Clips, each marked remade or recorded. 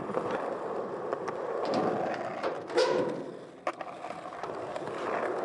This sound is recorded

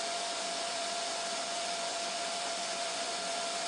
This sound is remade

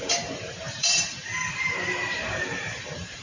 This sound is remade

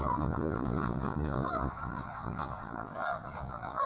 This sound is remade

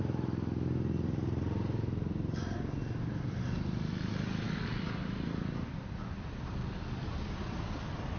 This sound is recorded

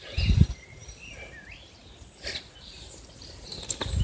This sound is remade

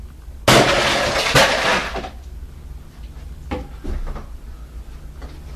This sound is recorded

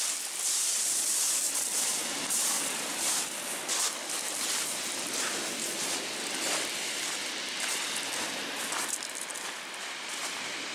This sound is recorded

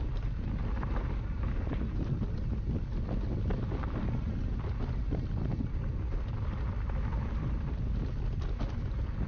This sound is recorded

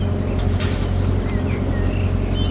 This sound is recorded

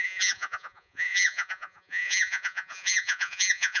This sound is remade